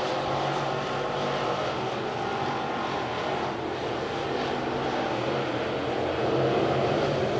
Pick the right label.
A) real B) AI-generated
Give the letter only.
A